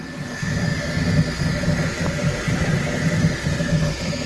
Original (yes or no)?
yes